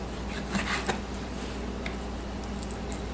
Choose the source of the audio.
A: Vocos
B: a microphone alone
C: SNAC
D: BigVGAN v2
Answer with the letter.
B